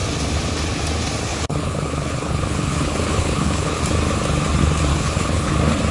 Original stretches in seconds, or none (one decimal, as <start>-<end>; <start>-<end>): 0.0-1.3; 3.8-4.9; 5.5-5.9